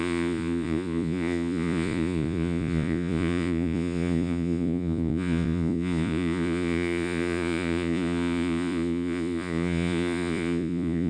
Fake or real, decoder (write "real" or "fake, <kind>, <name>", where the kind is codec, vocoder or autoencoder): fake, vocoder, Vocos